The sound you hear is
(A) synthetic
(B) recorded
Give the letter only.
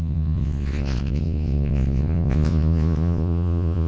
A